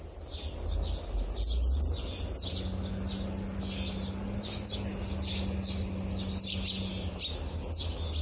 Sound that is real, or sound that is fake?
real